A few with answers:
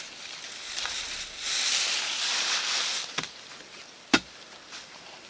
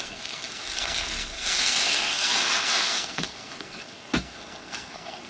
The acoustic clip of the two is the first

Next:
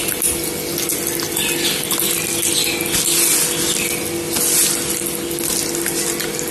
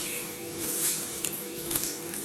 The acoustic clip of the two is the first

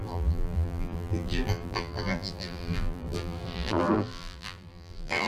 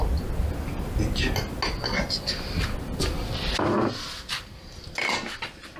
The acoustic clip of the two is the second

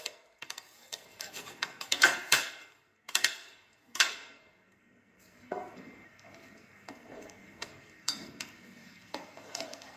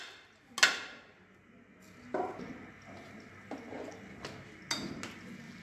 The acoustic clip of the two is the second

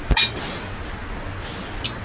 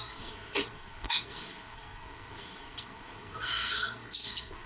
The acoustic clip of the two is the first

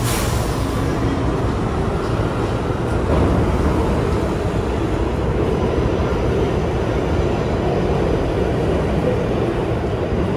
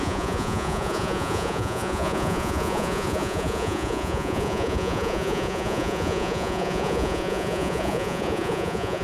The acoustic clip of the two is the first